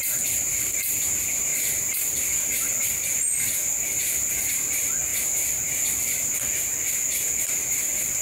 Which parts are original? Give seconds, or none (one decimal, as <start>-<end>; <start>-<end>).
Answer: 0.0-5.1; 6.2-8.2